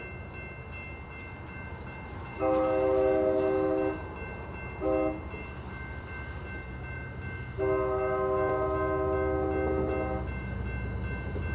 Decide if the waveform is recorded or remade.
recorded